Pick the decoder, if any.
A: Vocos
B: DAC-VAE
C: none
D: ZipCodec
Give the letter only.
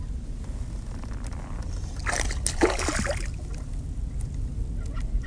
C